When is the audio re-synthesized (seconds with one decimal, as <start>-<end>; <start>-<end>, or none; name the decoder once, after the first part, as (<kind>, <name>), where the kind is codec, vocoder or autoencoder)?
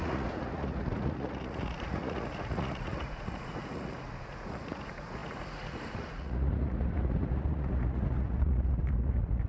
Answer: 0.0-9.5 (vocoder, Vocos)